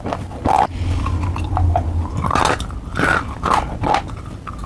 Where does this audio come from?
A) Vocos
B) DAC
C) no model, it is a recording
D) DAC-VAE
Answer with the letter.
C